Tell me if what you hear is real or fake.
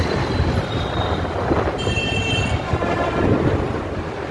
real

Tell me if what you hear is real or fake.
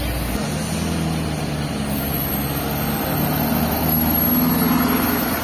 real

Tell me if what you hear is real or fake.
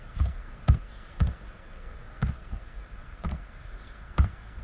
fake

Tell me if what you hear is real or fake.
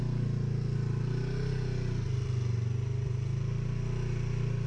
real